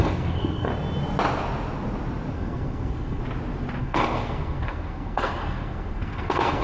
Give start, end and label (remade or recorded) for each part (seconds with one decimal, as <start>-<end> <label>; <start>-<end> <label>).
0.0-0.7 remade; 0.7-2.3 recorded; 2.3-3.2 remade; 3.2-3.8 recorded; 3.8-6.6 remade